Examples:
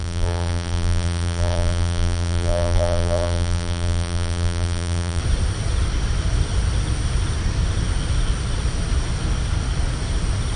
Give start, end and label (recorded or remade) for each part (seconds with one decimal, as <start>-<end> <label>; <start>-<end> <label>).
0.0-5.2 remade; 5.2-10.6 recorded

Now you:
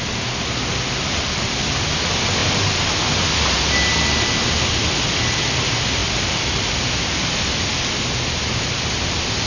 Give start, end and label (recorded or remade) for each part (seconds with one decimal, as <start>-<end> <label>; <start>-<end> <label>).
0.0-9.5 recorded

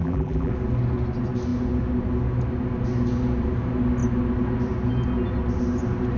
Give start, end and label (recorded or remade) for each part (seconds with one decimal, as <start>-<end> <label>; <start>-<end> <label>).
0.0-0.5 remade; 0.5-6.2 recorded

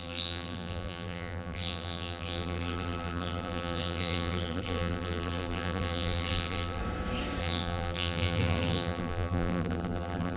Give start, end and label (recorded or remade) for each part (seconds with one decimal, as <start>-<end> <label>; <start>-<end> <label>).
0.0-6.8 remade; 6.8-7.4 recorded; 7.4-10.4 remade